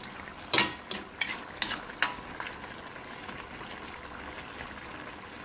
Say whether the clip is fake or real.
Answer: real